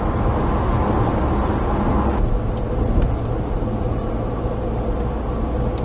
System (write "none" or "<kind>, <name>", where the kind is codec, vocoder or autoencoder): none